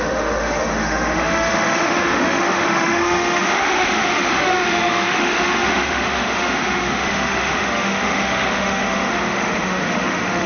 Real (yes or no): no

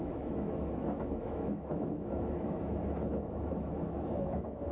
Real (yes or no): no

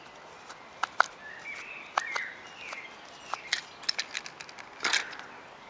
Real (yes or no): yes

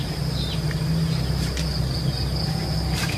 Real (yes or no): yes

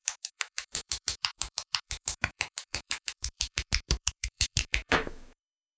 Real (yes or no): no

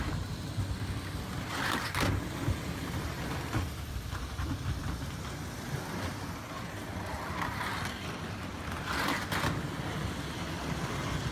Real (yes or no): yes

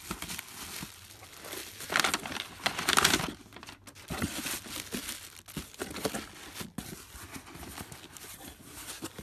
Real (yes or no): yes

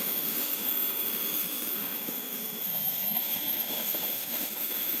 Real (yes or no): no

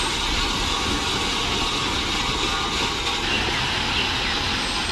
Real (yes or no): yes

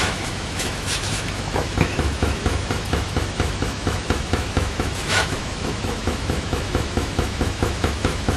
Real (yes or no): no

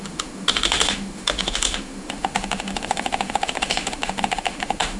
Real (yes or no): no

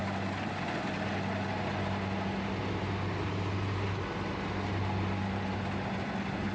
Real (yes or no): yes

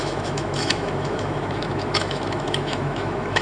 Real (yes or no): no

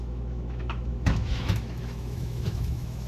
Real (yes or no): no